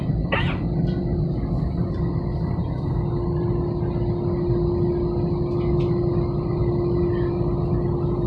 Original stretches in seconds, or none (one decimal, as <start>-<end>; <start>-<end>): 0.0-8.3